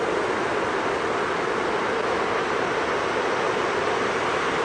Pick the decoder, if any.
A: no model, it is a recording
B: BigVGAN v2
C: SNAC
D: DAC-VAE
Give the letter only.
A